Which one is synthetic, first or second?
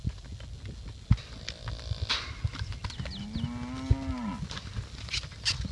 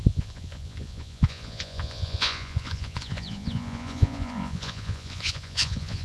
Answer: second